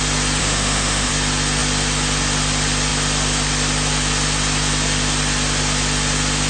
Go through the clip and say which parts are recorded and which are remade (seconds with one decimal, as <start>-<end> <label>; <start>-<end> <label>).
0.0-0.4 recorded; 0.4-1.1 remade; 1.1-6.5 recorded